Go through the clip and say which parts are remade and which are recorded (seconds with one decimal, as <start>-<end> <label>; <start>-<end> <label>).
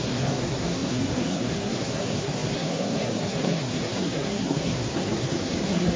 0.0-6.0 remade